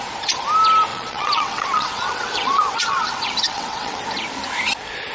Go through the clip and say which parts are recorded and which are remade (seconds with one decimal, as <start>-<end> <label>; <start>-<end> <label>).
0.0-0.9 recorded; 0.9-4.0 remade; 4.0-5.1 recorded